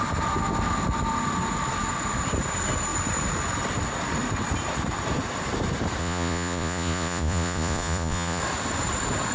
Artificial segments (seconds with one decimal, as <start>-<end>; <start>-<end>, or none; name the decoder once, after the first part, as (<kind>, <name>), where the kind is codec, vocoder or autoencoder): 6.0-8.4 (vocoder, Vocos)